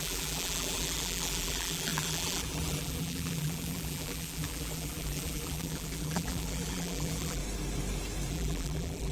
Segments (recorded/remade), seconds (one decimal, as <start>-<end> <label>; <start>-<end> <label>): 0.0-7.4 remade; 7.4-8.3 recorded; 8.3-9.1 remade